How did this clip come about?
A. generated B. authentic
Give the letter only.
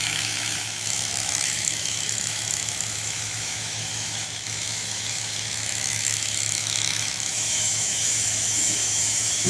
A